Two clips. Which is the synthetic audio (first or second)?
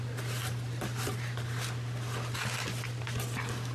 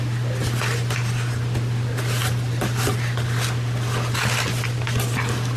second